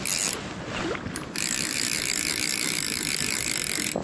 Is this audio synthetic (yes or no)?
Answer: no